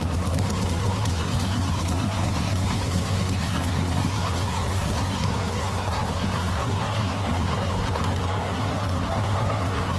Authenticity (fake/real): fake